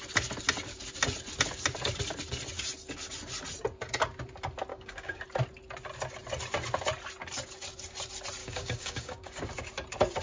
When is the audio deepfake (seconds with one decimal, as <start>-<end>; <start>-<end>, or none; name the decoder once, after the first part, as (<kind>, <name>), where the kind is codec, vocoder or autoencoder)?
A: 4.7-5.2 (codec, DAC); 8.4-9.4